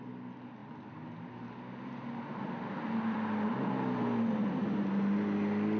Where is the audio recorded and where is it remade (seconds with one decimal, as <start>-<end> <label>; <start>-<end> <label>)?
0.0-5.8 recorded